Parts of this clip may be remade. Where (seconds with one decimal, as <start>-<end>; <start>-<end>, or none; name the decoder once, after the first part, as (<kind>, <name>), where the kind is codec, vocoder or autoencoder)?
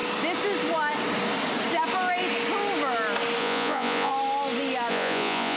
3.4-4.1 (vocoder, Vocos); 4.9-5.6